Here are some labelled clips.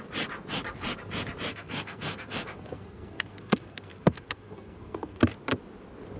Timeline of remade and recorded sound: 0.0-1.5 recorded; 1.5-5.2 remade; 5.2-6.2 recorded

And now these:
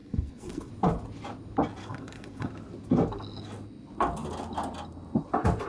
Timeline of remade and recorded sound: 0.0-0.7 remade; 0.7-1.8 recorded; 1.8-2.5 remade; 2.5-5.7 recorded